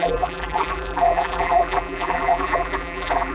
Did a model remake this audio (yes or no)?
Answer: yes